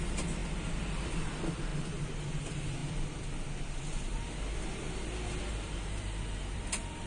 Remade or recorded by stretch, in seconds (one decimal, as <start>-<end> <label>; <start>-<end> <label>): 0.0-0.4 remade; 0.4-1.0 recorded; 1.0-1.7 remade; 1.7-2.3 recorded; 2.3-2.8 remade; 2.8-5.5 recorded; 5.5-7.1 remade